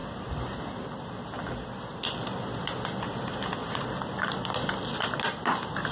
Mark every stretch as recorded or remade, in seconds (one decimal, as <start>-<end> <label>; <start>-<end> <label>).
0.0-5.9 recorded